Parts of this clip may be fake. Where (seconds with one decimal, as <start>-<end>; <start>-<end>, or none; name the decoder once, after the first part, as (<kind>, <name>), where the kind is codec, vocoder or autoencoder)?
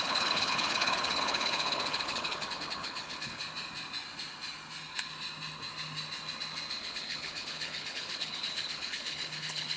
0.0-3.4 (codec, HILCodec); 6.8-9.8